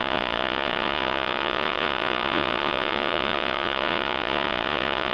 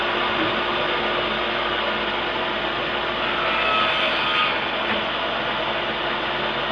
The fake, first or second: first